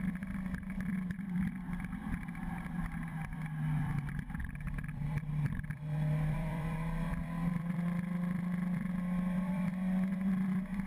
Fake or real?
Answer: fake